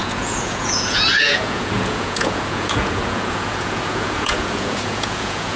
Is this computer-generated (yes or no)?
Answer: yes